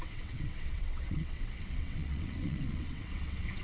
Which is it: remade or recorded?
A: remade